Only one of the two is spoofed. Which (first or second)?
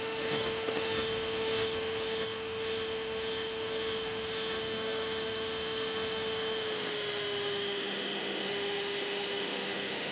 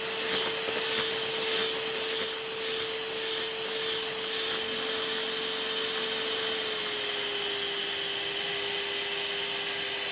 first